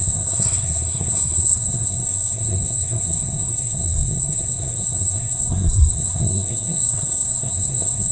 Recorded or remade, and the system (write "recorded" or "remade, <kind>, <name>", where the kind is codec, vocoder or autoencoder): remade, codec, SNAC